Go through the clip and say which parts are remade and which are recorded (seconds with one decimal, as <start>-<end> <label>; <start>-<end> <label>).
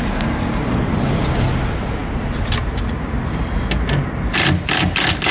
0.0-5.3 recorded